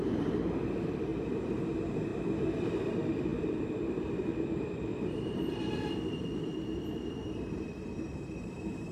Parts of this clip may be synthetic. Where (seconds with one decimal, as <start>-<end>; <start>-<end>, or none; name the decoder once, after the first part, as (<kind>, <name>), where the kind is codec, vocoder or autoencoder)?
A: 0.0-1.1 (vocoder, BigVGAN v2); 1.6-2.1; 2.6-8.9